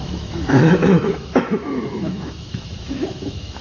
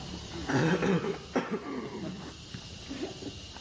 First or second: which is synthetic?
first